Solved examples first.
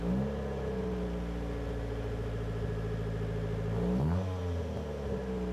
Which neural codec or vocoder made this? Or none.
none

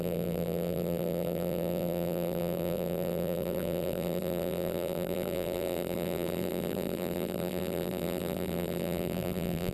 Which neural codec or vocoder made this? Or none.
vocoder, BigVGAN v2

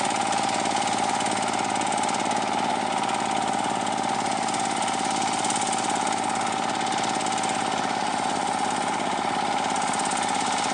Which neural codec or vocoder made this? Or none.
none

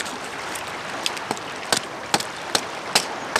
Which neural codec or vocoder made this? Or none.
none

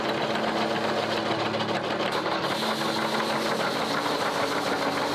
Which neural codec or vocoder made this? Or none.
none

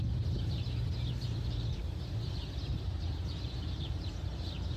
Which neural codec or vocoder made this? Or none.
vocoder, BigVGAN v2